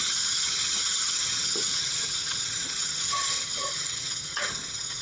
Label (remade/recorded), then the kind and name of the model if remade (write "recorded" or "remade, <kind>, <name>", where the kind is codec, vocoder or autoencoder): remade, vocoder, HiFi-GAN